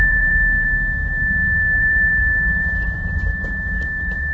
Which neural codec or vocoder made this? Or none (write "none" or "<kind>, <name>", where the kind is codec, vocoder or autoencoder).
vocoder, BigVGAN v2